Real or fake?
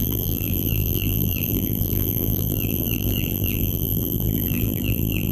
fake